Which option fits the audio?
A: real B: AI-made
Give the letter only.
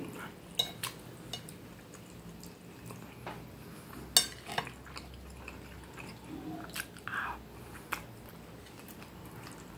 A